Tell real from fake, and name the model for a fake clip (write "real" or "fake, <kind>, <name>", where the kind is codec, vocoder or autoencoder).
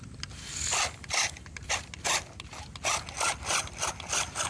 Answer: real